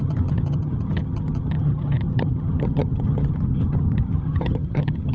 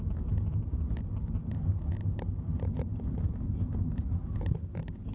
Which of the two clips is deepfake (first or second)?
first